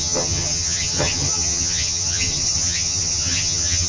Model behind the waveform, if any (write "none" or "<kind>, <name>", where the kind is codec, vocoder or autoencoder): vocoder, HiFi-GAN